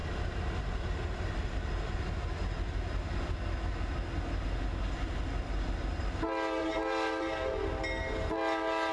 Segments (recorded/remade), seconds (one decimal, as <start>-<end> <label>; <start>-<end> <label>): 0.0-6.6 recorded; 6.6-7.8 remade; 7.8-8.9 recorded